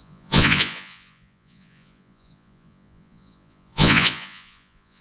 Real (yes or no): no